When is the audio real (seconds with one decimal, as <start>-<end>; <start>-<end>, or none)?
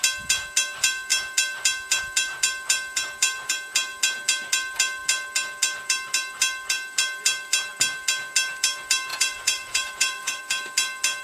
0.0-9.1; 10.4-11.2